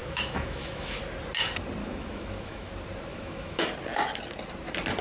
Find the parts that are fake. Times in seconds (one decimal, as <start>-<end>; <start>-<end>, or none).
0.0-1.0; 1.8-2.7; 3.1-3.7